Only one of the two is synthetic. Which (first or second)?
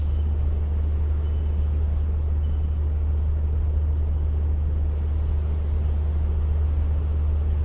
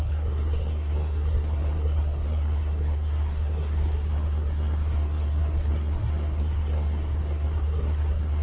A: second